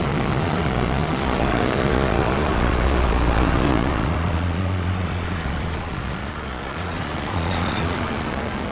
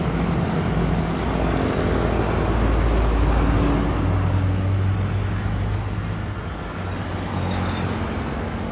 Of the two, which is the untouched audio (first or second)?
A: second